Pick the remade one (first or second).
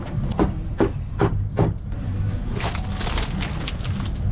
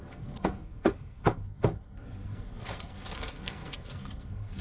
second